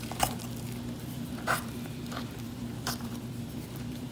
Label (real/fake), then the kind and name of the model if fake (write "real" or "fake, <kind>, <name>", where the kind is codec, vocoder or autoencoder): fake, vocoder, BigVGAN v2